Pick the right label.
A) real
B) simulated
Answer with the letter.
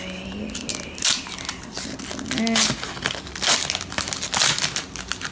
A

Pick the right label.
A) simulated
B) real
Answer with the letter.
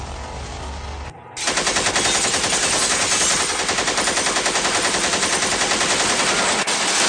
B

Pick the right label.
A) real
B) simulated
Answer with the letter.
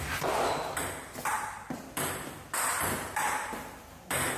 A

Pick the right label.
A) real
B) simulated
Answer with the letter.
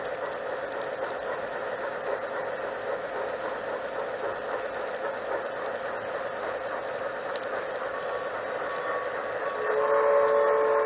A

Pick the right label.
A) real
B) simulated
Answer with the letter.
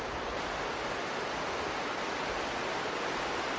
A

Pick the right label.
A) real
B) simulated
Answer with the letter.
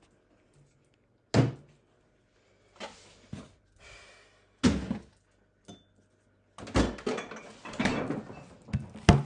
A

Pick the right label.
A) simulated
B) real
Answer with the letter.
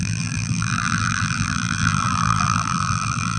A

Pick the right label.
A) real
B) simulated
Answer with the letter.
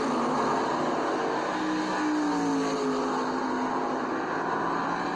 A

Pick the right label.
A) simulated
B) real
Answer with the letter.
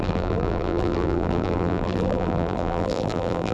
A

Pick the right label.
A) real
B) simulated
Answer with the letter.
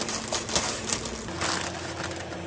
A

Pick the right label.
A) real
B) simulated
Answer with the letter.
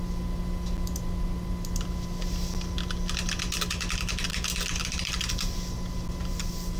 A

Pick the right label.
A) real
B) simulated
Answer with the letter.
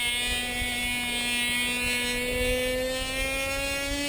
A